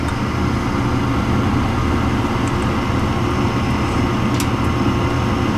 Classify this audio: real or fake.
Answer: real